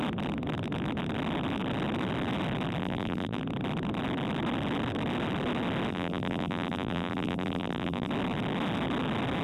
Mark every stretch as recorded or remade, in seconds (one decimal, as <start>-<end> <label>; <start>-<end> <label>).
0.0-2.8 recorded; 2.8-3.4 remade; 3.4-5.9 recorded; 5.9-8.1 remade; 8.1-9.4 recorded

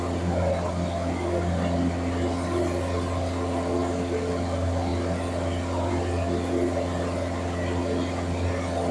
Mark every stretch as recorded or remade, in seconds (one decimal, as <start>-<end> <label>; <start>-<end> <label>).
0.0-8.9 recorded

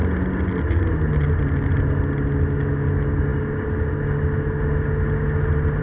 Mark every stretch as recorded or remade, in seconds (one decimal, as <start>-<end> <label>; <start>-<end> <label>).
0.0-5.8 recorded

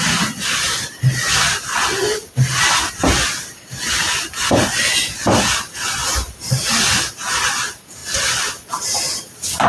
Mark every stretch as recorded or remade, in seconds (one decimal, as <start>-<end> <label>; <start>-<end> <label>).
0.0-9.7 recorded

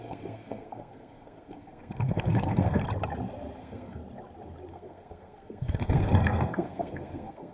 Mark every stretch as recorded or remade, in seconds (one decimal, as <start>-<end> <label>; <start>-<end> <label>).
0.0-2.8 remade; 2.8-3.6 recorded; 3.6-4.0 remade; 4.0-4.7 recorded; 4.7-7.5 remade